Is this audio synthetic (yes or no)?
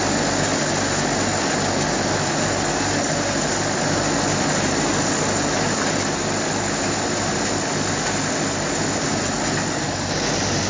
no